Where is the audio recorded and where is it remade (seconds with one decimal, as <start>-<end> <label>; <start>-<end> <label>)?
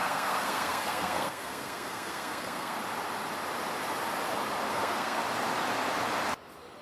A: 0.0-2.8 remade; 2.8-4.7 recorded; 4.7-5.2 remade; 5.2-6.8 recorded